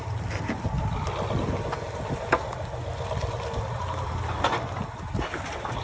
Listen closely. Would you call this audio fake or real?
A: real